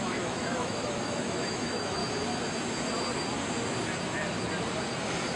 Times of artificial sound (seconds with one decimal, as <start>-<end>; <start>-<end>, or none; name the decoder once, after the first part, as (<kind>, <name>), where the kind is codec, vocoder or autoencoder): 0.0-2.0 (autoencoder, DAC-VAE)